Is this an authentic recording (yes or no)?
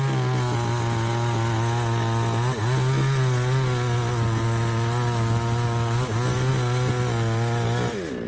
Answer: yes